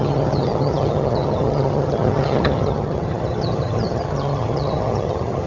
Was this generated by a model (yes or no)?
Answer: yes